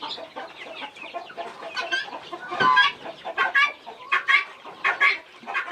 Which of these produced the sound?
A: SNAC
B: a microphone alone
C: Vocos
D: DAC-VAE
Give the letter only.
B